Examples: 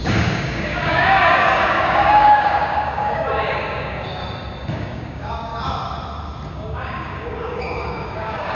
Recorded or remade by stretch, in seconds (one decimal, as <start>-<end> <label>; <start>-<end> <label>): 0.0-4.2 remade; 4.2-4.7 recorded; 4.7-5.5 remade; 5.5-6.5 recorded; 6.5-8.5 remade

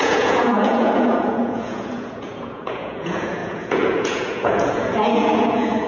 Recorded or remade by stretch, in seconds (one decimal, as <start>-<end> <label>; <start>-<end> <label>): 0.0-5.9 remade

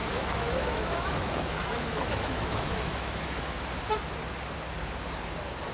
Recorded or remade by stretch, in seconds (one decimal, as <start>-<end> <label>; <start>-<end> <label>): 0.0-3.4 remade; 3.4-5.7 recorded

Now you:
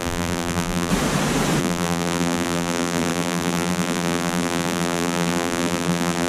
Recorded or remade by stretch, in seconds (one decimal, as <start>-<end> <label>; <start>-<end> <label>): 0.0-0.9 remade; 0.9-1.6 recorded; 1.6-6.3 remade